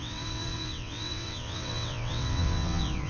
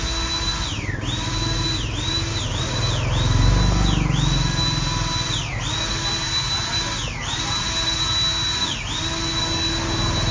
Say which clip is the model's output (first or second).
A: first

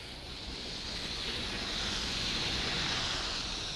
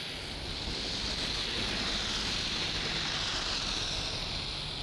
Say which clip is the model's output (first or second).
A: first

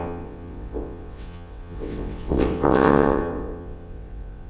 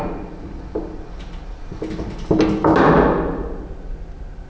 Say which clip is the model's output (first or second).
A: first